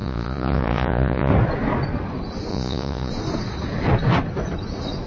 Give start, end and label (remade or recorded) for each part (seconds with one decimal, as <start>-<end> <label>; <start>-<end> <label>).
0.0-1.3 remade; 1.3-2.5 recorded; 2.5-3.1 remade; 3.1-5.1 recorded